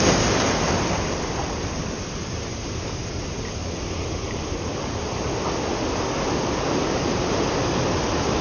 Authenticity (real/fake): real